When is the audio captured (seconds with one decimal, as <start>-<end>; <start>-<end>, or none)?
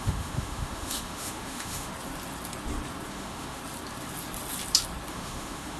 1.9-3.1; 3.6-5.1